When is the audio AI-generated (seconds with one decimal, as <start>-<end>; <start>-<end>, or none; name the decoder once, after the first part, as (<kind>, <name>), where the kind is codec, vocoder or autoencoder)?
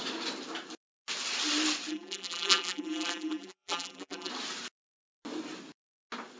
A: 1.9-4.3 (vocoder, BigVGAN v2)